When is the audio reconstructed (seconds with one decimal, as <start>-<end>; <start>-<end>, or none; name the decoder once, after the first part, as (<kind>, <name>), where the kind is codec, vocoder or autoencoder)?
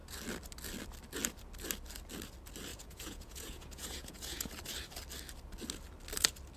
2.7-4.5 (vocoder, Vocos)